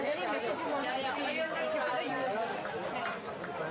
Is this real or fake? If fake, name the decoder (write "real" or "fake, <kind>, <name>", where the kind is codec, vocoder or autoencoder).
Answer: real